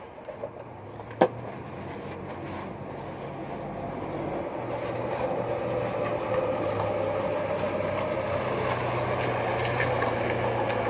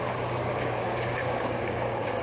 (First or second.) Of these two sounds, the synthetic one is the second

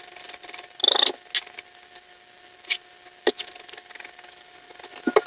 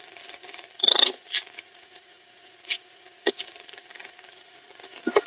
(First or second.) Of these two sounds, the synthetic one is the second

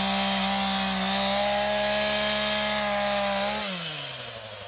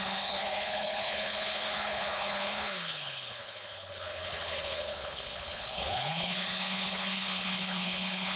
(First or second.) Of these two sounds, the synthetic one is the second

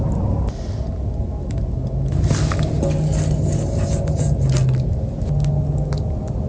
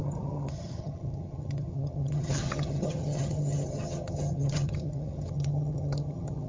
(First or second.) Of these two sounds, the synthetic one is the second